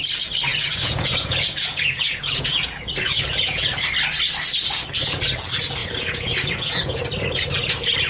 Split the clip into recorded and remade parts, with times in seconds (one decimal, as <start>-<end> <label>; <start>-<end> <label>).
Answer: 0.0-0.5 recorded; 0.5-3.6 remade; 3.6-5.8 recorded; 5.8-7.0 remade; 7.0-8.1 recorded